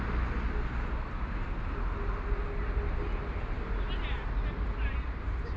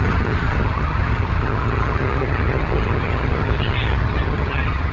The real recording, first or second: first